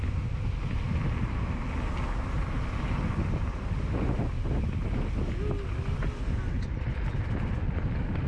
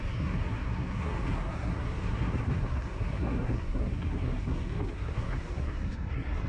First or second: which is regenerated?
second